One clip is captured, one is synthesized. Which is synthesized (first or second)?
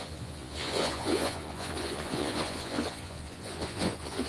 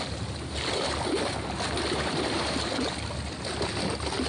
first